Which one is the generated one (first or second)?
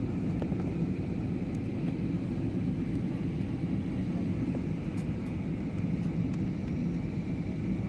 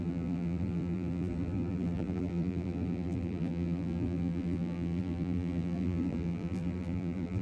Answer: second